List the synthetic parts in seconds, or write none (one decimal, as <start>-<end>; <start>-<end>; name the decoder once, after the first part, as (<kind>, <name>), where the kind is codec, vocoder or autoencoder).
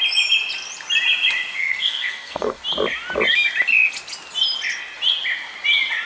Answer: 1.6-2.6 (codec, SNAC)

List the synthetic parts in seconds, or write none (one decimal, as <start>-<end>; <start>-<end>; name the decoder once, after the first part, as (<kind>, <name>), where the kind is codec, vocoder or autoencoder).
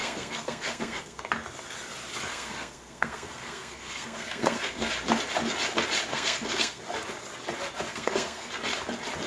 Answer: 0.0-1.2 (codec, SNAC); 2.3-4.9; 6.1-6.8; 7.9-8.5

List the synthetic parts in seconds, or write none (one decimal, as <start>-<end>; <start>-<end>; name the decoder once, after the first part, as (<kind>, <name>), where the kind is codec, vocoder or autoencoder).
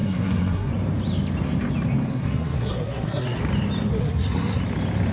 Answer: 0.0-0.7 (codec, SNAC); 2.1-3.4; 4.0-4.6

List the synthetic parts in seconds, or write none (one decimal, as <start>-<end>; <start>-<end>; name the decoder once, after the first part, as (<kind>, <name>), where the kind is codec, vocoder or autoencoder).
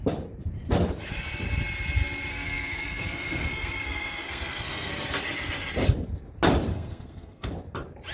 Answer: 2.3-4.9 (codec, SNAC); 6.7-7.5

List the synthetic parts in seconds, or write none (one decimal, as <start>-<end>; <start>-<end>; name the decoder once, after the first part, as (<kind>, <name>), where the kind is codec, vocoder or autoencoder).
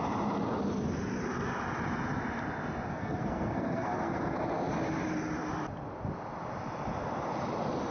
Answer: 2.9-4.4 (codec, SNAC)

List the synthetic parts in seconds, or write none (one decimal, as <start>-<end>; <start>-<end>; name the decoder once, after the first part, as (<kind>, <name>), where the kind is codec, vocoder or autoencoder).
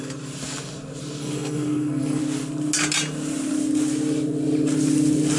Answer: 1.2-2.2 (codec, SNAC)